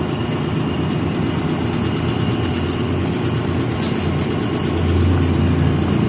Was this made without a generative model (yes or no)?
yes